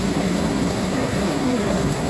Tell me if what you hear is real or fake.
fake